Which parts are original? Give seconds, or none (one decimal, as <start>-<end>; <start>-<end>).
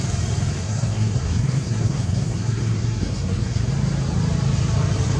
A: 0.0-0.6; 3.7-5.2